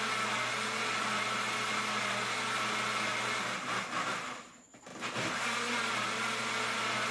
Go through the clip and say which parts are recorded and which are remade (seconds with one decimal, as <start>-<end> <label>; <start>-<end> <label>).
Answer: 0.0-7.1 recorded